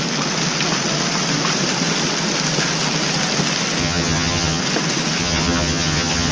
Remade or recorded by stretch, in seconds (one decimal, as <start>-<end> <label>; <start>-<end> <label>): 0.0-3.8 recorded; 3.8-4.6 remade; 4.6-5.2 recorded; 5.2-6.3 remade